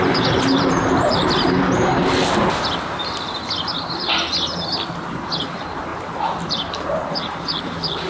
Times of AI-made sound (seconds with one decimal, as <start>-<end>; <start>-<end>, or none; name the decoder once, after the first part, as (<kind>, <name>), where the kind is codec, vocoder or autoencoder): 0.0-2.0 (vocoder, BigVGAN v2); 5.4-5.9; 6.5-8.1